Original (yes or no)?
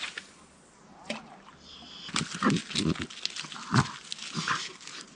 yes